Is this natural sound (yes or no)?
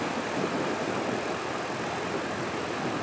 yes